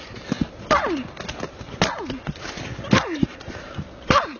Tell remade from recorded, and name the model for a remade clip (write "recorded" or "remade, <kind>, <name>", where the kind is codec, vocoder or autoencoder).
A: recorded